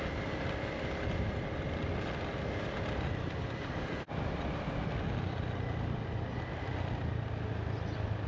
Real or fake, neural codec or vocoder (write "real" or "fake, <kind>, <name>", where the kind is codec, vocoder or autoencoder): real